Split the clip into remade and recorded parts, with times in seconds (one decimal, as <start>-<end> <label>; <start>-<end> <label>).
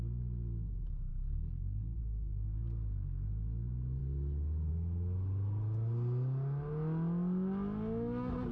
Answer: 0.0-1.1 recorded; 1.1-2.0 remade; 2.0-8.5 recorded